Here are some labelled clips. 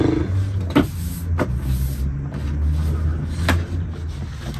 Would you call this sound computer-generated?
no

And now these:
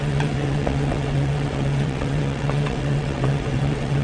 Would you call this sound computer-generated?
yes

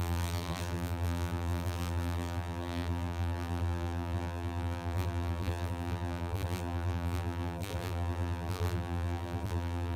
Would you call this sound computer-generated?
yes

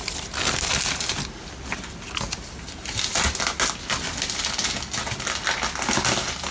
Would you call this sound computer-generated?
no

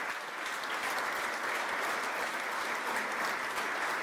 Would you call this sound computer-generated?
no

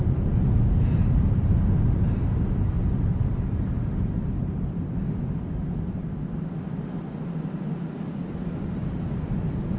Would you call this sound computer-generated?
no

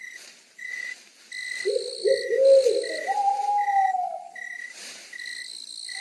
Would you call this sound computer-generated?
no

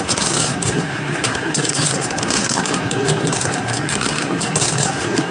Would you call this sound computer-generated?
yes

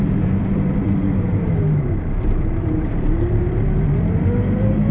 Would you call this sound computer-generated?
yes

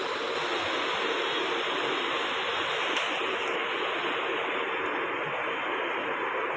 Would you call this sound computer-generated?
no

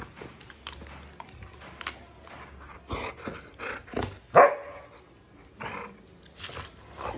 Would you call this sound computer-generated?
no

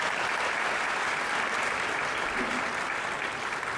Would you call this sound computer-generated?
no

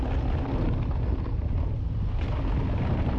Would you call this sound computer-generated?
no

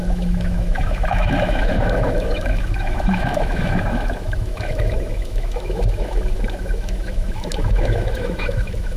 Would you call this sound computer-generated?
yes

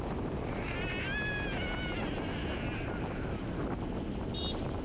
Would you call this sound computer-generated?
no